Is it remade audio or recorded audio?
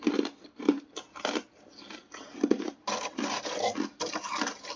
recorded